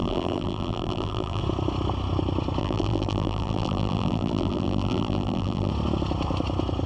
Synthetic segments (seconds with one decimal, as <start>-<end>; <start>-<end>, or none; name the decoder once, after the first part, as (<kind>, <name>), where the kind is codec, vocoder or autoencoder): 0.0-1.4 (vocoder, BigVGAN v2); 2.6-5.7

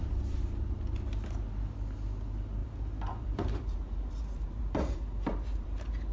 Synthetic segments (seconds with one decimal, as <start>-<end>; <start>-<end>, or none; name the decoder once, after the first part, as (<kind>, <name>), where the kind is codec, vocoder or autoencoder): 0.0-0.6 (vocoder, BigVGAN v2); 2.6-6.1

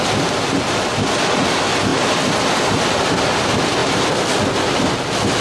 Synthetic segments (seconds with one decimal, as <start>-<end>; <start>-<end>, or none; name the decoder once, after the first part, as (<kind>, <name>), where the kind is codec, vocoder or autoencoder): none